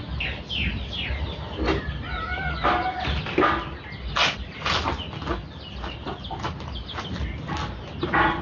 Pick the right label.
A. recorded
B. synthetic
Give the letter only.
A